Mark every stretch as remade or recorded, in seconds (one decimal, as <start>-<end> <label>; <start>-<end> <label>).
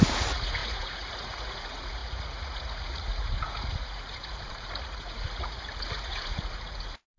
0.0-7.2 remade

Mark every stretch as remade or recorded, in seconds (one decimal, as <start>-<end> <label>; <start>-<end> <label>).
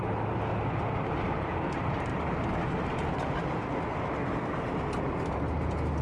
0.0-6.0 recorded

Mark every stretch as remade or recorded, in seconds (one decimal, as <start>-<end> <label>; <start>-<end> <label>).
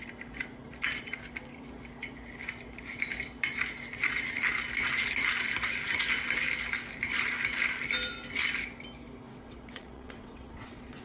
0.0-9.3 recorded; 9.3-11.0 remade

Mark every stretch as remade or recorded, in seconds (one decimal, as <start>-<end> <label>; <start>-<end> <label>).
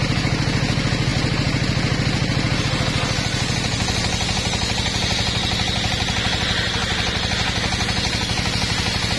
0.0-9.2 recorded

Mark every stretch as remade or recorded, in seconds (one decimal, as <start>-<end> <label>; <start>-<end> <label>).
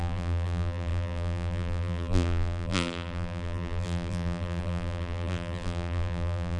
0.0-6.6 remade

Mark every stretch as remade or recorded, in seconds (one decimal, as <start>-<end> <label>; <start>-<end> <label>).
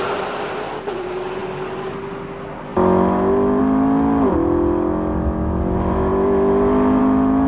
0.0-7.5 recorded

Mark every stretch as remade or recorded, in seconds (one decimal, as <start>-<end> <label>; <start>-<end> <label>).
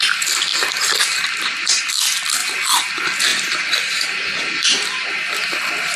0.0-0.5 recorded; 0.5-1.8 remade; 1.8-3.3 recorded; 3.3-5.1 remade; 5.1-6.0 recorded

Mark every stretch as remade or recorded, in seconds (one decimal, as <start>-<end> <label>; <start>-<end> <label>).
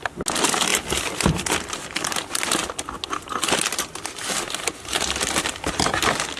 0.0-6.4 recorded